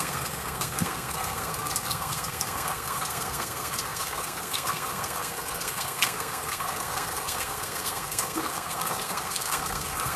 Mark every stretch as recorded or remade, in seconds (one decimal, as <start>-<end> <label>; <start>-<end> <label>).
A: 0.0-10.2 remade